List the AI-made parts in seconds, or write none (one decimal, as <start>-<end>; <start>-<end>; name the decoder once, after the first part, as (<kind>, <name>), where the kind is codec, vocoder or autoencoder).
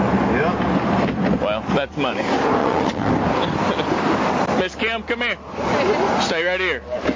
2.6-3.1 (vocoder, WaveNeXt)